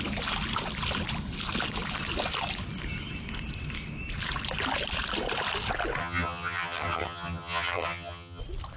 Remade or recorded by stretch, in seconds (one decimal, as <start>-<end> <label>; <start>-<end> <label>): 0.0-6.0 recorded; 6.0-8.4 remade; 8.4-8.8 recorded